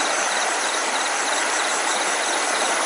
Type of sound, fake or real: fake